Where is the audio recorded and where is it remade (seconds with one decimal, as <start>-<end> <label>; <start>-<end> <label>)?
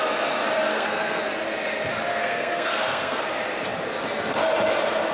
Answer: 0.0-0.7 recorded; 0.7-1.2 remade; 1.2-2.1 recorded; 2.1-3.2 remade; 3.2-5.1 recorded